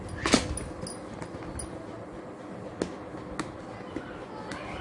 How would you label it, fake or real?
real